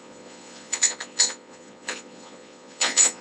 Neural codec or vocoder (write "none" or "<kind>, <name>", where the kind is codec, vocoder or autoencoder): vocoder, Vocos